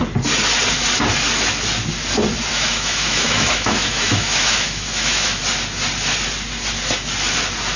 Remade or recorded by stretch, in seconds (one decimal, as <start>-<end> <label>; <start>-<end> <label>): 0.0-2.5 recorded; 2.5-5.4 remade; 5.4-7.8 recorded